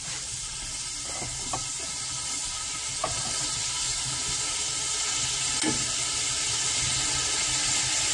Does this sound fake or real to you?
real